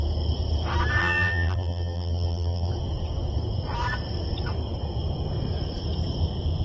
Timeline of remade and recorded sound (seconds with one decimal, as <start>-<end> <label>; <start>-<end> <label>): 0.0-1.0 recorded; 1.0-2.7 remade; 2.7-6.6 recorded